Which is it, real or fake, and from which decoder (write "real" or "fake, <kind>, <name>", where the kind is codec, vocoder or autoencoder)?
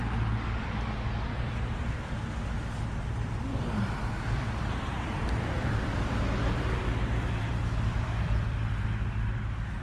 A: fake, vocoder, BigVGAN v2